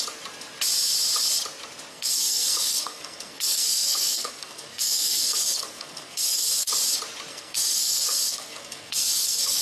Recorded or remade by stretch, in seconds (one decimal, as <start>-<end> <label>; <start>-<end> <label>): 0.0-1.9 recorded; 1.9-6.7 remade; 6.7-7.3 recorded; 7.3-9.6 remade